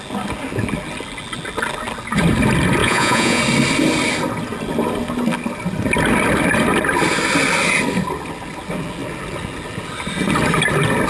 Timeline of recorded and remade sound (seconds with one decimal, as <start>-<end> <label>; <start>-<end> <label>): 0.0-2.8 recorded; 2.8-3.4 remade; 3.4-11.1 recorded